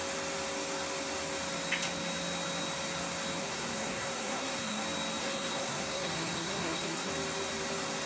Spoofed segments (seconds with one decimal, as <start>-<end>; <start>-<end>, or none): 3.4-4.8; 5.2-7.1